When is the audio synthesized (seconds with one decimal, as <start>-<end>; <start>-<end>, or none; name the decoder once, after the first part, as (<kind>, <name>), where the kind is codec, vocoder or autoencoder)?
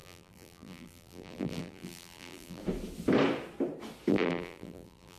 0.0-2.6 (vocoder, BigVGAN v2); 4.1-5.2